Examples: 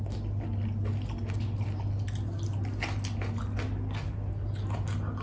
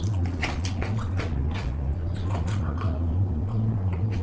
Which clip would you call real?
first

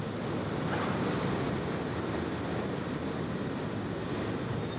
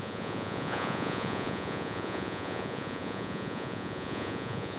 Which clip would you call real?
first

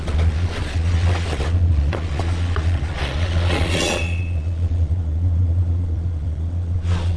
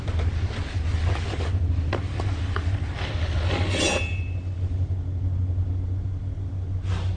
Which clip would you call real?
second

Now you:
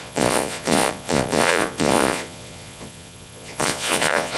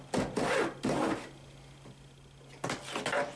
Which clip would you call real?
second